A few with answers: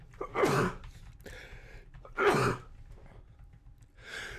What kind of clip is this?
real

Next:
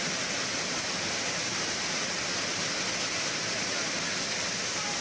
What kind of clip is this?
real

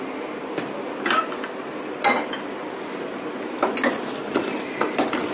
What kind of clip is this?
real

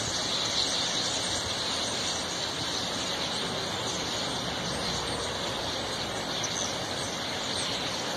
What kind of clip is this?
real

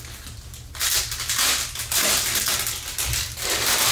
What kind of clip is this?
real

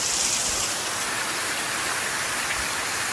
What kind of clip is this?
real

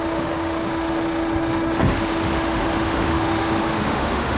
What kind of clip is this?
fake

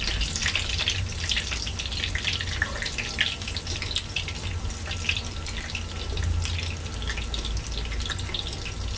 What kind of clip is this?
real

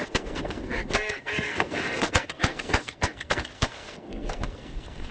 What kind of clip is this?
fake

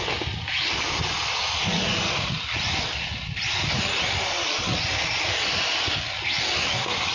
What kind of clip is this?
real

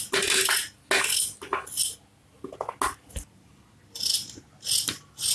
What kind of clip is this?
real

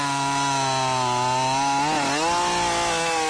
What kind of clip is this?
real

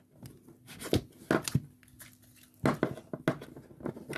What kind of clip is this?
real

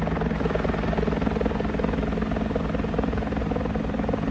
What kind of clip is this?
real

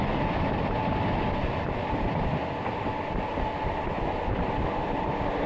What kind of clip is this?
real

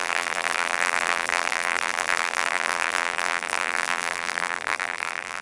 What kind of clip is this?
fake